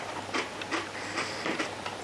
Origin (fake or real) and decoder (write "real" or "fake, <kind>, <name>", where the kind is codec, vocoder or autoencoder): fake, vocoder, BigVGAN v2